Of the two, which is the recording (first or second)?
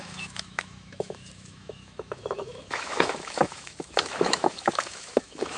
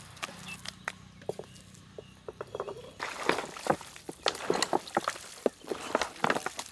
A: second